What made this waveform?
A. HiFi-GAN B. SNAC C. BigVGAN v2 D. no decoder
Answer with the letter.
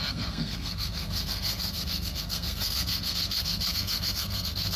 B